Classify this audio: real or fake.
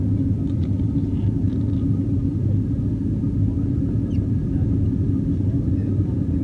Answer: real